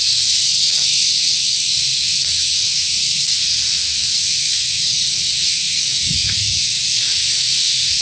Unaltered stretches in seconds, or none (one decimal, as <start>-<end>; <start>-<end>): none